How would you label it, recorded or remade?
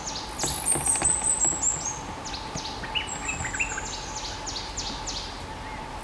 recorded